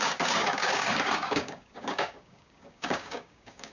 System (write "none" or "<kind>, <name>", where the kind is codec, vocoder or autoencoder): codec, DAC